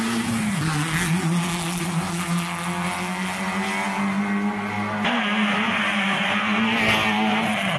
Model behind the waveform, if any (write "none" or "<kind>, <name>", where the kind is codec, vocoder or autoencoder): none